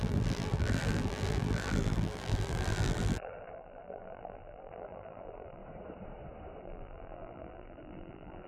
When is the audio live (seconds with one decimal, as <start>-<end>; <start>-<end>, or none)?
5.6-6.6